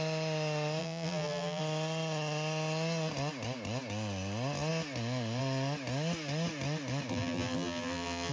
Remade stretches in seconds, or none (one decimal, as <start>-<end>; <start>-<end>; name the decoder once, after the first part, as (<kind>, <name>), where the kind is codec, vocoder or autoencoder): 0.8-1.6 (vocoder, BigVGAN v2); 7.1-8.3